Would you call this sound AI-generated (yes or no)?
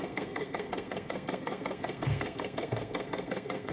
yes